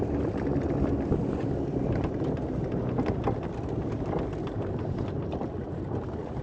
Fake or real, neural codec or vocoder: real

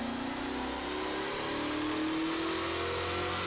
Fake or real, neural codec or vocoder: real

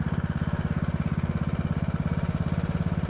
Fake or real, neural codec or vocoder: real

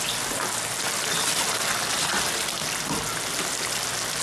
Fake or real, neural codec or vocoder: real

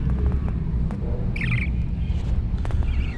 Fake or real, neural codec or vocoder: real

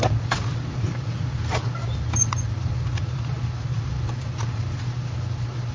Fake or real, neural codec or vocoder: real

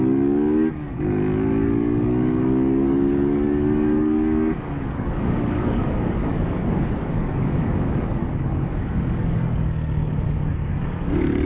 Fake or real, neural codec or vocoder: fake, codec, DAC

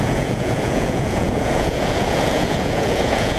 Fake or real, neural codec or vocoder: fake, vocoder, Vocos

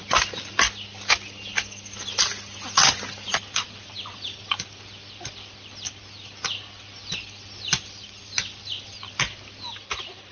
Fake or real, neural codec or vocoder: real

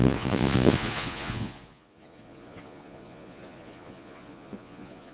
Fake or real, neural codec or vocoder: fake, vocoder, Vocos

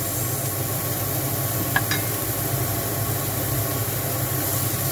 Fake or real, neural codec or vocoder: real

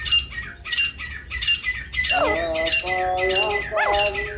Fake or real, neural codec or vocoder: real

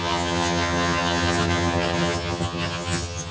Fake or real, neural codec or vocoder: fake, vocoder, HiFi-GAN